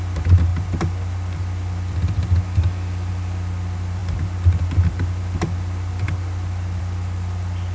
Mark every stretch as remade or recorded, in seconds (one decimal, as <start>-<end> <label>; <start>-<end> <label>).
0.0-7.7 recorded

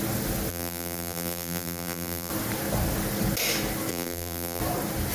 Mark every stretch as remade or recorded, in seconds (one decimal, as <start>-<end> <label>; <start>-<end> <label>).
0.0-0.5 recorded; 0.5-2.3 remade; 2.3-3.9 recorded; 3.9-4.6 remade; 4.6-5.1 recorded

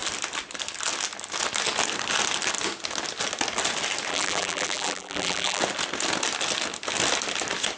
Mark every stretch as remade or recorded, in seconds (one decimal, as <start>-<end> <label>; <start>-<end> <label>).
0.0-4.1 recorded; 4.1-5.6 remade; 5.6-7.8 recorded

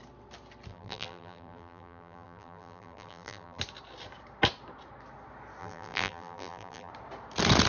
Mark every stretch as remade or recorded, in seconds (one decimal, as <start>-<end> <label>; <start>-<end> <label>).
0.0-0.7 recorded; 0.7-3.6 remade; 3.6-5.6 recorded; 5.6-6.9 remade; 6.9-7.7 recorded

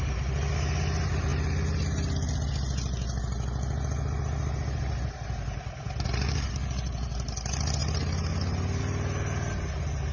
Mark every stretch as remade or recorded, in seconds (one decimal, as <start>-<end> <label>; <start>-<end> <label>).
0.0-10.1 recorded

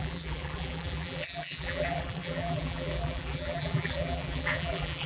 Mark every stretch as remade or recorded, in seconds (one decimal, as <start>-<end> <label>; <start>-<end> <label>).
0.0-5.1 remade